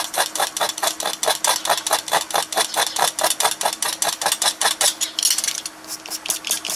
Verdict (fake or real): real